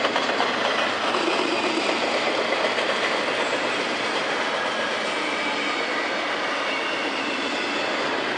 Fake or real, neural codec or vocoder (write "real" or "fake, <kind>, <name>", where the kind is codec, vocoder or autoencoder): real